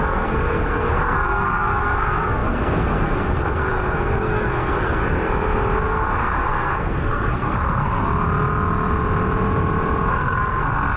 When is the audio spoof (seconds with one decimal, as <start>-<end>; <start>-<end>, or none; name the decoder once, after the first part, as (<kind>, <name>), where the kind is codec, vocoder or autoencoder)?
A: 0.0-5.0 (codec, SNAC); 5.8-8.0; 10.1-11.0